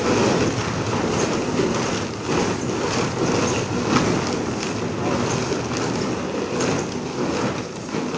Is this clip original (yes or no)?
yes